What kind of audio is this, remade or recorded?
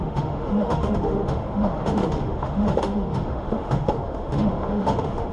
remade